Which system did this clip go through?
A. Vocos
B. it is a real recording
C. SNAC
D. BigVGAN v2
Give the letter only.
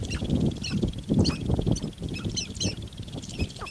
B